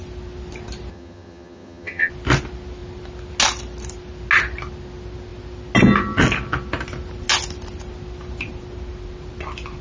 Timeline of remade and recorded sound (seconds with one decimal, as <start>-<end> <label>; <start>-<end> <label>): 0.0-0.9 recorded; 0.9-2.1 remade; 2.1-9.8 recorded